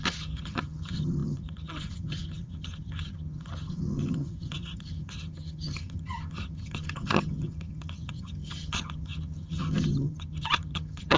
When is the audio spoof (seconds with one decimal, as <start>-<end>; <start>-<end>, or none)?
0.0-11.2

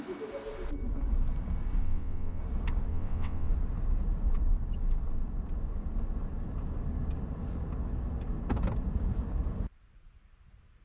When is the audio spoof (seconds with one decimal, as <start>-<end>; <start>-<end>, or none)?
1.8-2.4; 2.9-3.5

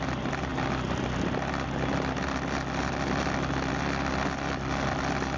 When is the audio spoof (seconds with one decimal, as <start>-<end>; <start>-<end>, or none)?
none

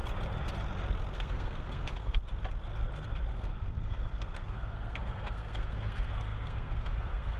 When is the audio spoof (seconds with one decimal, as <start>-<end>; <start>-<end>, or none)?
1.1-2.3; 3.3-7.4

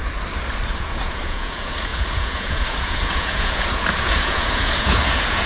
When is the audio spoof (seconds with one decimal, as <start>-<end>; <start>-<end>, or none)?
0.8-5.5